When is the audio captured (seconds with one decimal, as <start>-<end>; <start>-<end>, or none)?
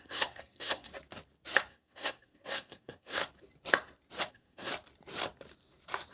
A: 0.9-1.7; 3.2-4.3; 4.7-6.1